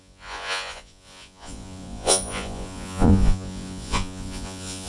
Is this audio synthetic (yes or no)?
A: yes